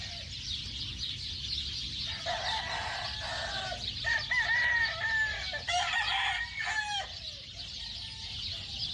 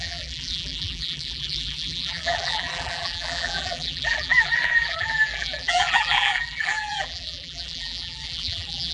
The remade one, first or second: second